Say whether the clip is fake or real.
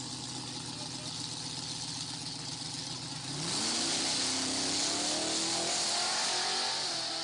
real